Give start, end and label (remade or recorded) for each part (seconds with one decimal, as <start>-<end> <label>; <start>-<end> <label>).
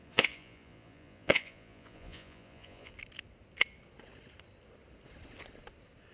0.0-2.9 remade; 2.9-6.1 recorded